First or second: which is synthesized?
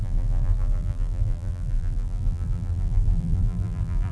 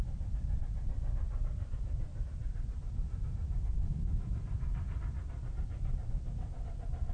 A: first